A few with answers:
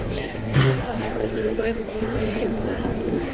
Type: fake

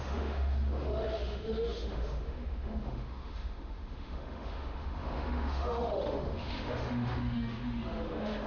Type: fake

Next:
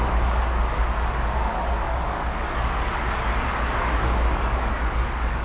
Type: fake